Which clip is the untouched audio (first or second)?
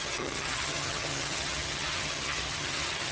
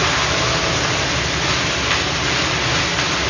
second